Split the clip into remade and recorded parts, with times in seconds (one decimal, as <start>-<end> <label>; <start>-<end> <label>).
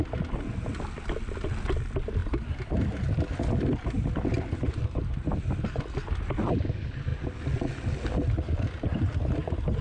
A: 0.0-9.8 recorded